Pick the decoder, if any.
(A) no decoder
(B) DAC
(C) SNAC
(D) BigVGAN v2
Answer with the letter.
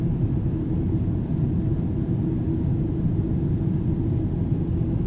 A